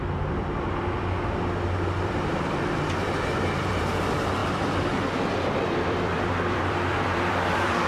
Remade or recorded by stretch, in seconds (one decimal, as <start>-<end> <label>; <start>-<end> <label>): 0.0-7.9 remade